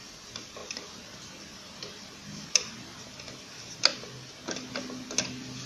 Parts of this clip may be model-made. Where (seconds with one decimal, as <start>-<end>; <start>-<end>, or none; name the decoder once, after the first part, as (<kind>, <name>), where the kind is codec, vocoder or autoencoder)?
none